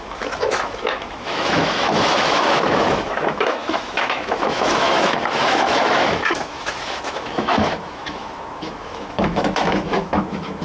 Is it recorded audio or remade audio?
remade